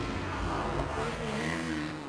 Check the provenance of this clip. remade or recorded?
remade